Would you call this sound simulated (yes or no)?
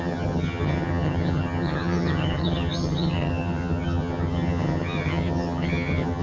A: yes